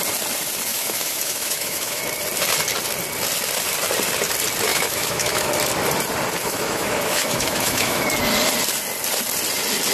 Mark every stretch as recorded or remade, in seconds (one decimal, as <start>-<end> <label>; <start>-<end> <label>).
0.0-0.7 recorded; 0.7-2.0 remade; 2.0-4.7 recorded; 4.7-5.5 remade; 5.5-6.4 recorded; 6.4-8.0 remade; 8.0-9.9 recorded